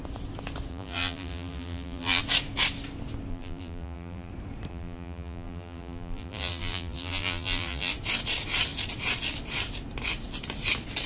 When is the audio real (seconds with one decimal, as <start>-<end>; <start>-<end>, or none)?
0.0-0.7; 2.2-3.3; 4.3-4.7; 7.9-11.1